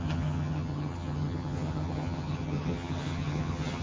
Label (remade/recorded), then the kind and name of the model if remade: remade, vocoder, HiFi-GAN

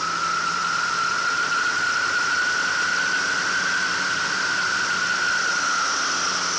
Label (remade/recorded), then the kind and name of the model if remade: recorded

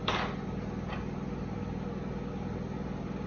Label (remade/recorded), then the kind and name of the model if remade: recorded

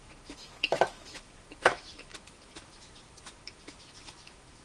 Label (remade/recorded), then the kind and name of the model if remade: remade, autoencoder, DAC-VAE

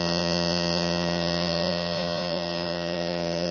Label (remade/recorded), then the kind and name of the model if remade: remade, vocoder, Vocos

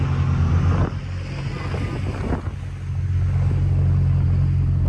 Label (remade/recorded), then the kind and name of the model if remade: recorded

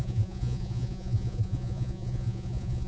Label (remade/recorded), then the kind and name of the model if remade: remade, vocoder, Vocos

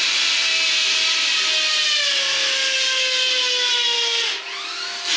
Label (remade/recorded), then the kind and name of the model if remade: recorded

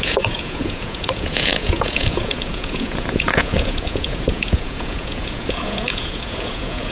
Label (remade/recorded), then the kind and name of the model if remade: remade, vocoder, Vocos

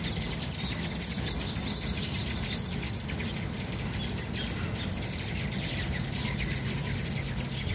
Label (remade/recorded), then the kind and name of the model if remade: recorded